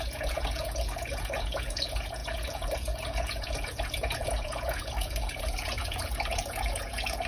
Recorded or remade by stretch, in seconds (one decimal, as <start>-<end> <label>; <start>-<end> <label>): 0.0-7.3 remade